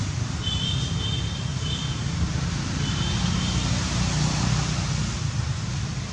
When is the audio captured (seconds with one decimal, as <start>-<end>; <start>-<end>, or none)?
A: 0.0-6.1